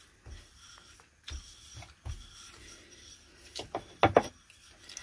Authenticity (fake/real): real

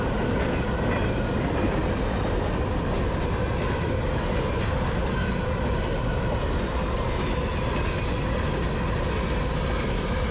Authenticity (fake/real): real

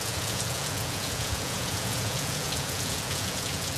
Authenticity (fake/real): fake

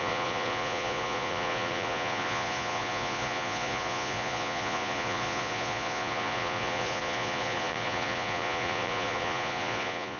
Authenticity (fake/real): fake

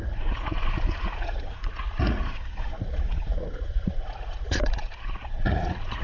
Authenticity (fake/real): fake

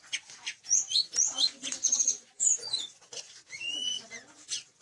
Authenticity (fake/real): fake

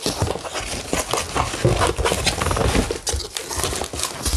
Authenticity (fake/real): real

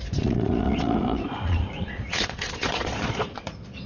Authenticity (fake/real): fake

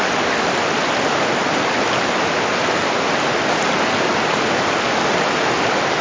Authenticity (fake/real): real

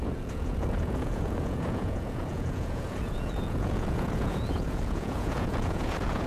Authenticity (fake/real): fake